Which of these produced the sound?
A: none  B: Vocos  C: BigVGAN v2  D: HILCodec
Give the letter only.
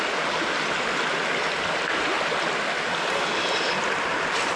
A